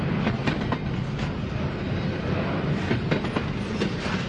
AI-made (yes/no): no